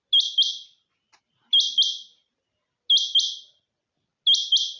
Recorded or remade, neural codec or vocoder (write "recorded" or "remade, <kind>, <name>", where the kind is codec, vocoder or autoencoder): recorded